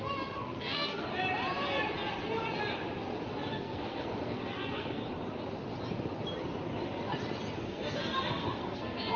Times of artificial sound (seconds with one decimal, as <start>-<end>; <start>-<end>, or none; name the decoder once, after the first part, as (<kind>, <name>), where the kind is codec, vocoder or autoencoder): 0.0-1.1 (codec, SNAC); 3.5-5.0; 7.6-9.2

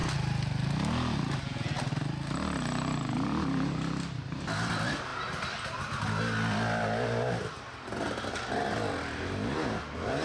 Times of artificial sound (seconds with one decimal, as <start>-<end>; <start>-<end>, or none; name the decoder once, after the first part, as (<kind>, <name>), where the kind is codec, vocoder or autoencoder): none

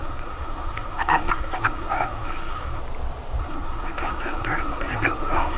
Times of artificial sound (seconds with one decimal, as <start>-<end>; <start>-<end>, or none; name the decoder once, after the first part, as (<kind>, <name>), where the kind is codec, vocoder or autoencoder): 0.0-2.8 (codec, SNAC); 3.4-5.6

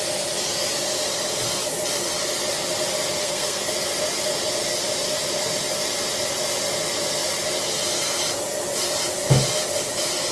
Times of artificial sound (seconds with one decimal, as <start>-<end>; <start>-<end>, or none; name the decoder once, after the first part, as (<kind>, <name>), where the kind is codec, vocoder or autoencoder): 3.2-3.7 (codec, SNAC)

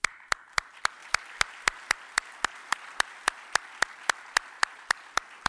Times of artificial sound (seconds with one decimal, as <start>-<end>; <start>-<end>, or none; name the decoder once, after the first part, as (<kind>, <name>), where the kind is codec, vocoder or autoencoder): none

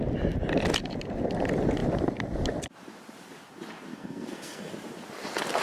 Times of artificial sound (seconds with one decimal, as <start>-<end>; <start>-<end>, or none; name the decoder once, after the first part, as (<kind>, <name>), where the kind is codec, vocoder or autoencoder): 3.9-4.7 (codec, SNAC)